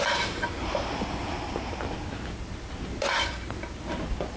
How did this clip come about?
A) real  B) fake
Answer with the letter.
A